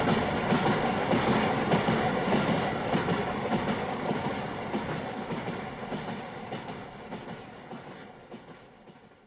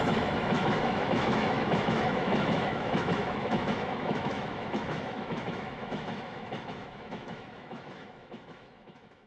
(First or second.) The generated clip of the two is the second